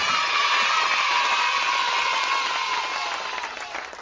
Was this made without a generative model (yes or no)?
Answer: yes